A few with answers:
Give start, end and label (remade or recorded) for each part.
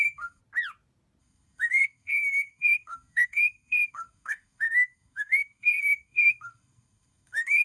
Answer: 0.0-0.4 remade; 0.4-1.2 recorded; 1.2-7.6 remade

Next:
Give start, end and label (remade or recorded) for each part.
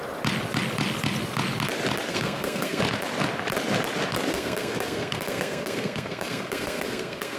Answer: 0.0-2.1 recorded; 2.1-2.8 remade; 2.8-4.3 recorded; 4.3-7.4 remade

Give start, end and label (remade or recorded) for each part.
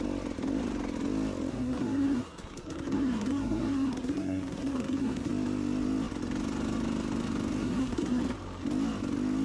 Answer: 0.0-1.5 recorded; 1.5-5.3 remade; 5.3-7.6 recorded; 7.6-8.2 remade; 8.2-9.4 recorded